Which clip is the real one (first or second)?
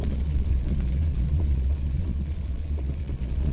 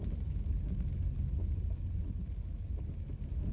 second